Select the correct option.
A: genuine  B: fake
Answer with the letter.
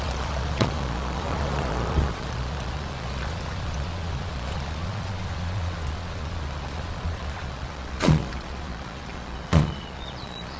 B